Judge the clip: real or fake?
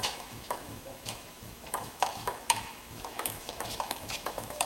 fake